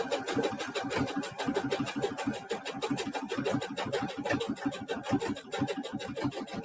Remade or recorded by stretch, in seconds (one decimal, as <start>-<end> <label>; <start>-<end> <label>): 0.0-6.6 recorded